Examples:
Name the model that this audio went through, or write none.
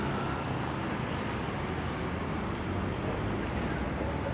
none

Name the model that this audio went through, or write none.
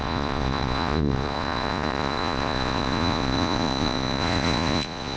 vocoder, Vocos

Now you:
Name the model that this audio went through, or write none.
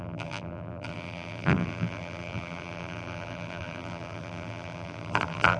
vocoder, BigVGAN v2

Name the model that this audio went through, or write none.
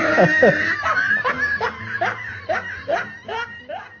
none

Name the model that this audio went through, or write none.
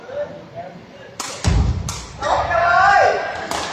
none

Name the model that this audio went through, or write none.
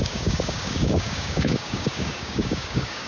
codec, DAC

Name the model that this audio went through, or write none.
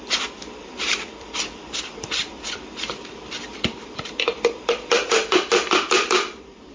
vocoder, BigVGAN v2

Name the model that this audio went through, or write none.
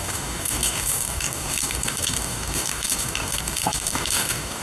codec, DAC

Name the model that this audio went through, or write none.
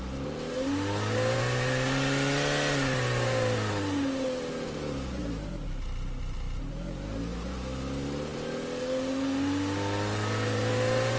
none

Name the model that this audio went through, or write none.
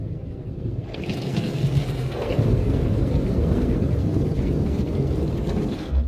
codec, SNAC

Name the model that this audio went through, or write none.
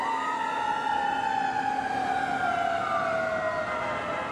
none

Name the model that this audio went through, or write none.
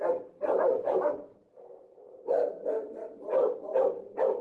none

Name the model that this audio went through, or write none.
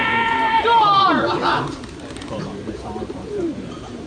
vocoder, BigVGAN v2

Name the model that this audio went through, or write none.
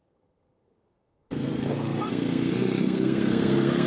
codec, SNAC